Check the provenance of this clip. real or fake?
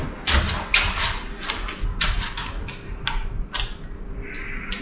real